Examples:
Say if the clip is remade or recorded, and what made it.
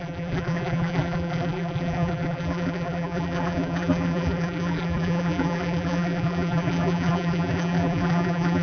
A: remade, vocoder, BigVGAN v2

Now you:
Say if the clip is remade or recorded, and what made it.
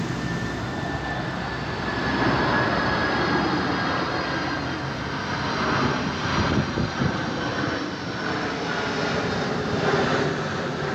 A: recorded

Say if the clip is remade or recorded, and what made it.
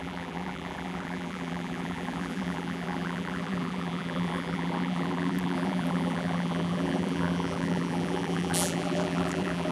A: remade, vocoder, BigVGAN v2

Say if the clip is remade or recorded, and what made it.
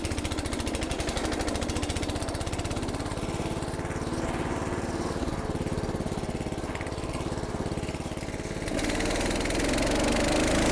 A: recorded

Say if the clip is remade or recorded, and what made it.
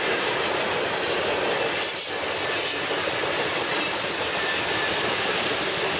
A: recorded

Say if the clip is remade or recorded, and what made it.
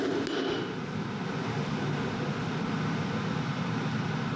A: recorded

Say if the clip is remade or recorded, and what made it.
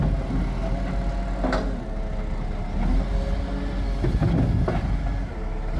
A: recorded